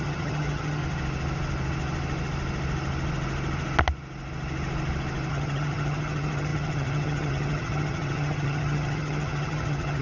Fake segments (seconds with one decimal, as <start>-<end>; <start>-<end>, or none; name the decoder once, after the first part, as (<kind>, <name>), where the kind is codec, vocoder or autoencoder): 0.0-0.8 (vocoder, HiFi-GAN); 5.3-10.0

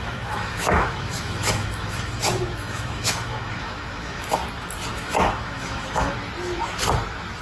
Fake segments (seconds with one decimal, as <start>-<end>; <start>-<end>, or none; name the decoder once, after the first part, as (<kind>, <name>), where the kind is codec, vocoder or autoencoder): 0.0-4.4 (autoencoder, DAC-VAE); 4.9-6.1

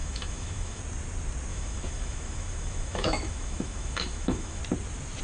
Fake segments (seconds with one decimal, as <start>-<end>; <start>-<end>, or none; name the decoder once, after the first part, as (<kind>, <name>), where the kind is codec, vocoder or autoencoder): 0.0-0.8 (autoencoder, DAC-VAE); 1.5-4.6

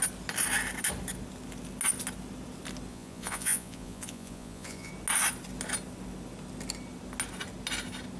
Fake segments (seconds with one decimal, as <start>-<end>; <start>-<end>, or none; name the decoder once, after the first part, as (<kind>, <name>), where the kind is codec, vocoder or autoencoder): 2.9-4.9 (vocoder, Vocos)

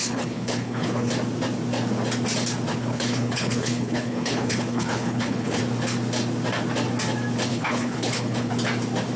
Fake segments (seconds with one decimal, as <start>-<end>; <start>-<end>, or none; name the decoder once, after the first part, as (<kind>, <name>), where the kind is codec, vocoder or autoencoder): 0.0-1.1 (codec, HILCodec); 2.7-5.6; 7.5-8.5